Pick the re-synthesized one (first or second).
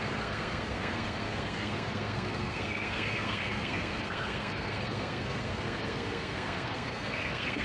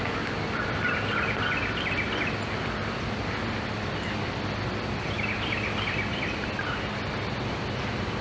first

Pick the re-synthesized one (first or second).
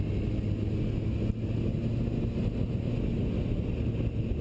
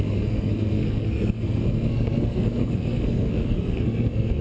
second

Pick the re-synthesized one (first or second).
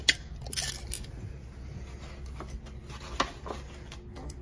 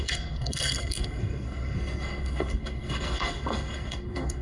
second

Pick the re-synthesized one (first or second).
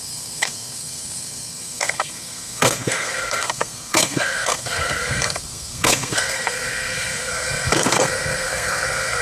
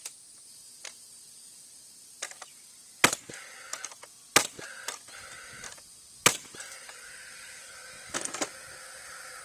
first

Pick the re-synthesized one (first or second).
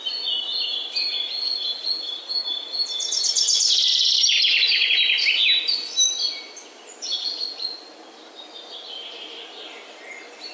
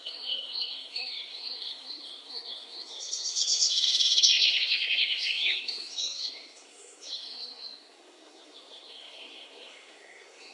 second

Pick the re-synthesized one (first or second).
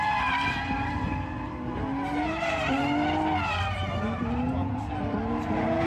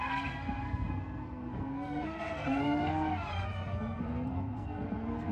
second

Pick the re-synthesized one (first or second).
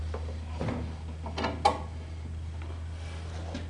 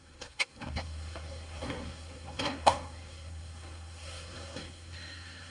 second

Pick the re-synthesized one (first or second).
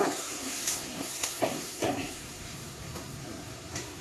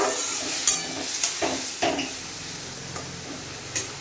first